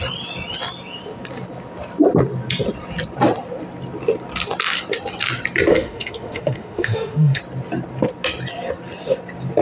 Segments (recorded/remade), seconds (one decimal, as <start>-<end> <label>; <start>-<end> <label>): 0.0-5.7 recorded; 5.7-7.4 remade; 7.4-9.6 recorded